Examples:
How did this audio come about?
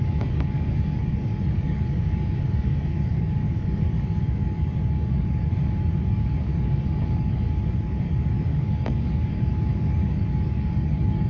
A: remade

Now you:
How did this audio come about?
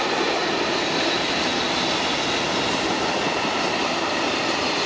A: recorded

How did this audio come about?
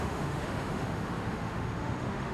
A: remade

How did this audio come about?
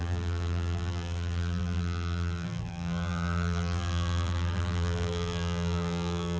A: remade